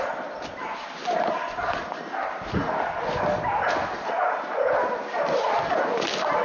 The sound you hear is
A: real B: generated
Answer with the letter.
A